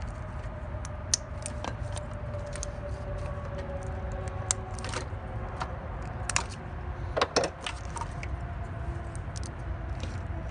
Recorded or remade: recorded